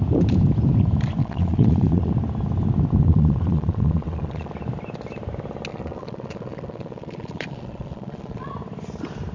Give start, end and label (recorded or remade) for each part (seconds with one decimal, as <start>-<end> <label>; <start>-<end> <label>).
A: 0.0-1.2 recorded; 1.2-2.1 remade; 2.1-3.0 recorded; 3.0-4.5 remade; 4.5-5.7 recorded; 5.7-8.5 remade; 8.5-9.3 recorded